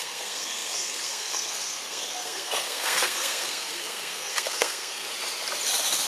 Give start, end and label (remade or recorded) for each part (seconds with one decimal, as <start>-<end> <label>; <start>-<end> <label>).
0.0-5.1 remade; 5.1-6.1 recorded